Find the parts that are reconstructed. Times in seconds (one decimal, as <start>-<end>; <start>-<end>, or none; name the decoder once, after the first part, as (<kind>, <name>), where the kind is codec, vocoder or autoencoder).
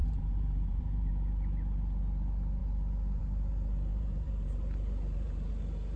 0.0-1.1 (vocoder, BigVGAN v2); 3.9-5.5